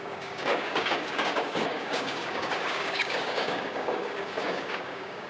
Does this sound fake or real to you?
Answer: fake